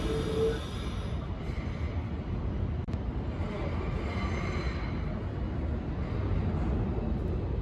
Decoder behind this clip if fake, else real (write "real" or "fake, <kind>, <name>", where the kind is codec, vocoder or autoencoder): real